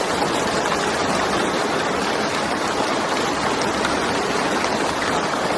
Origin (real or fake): real